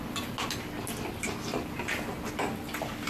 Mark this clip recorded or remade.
recorded